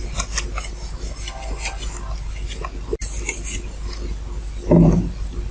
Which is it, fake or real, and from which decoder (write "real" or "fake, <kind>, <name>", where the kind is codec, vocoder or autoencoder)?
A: real